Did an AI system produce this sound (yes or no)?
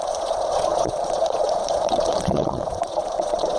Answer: yes